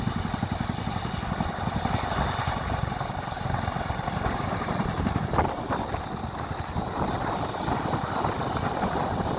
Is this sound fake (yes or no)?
no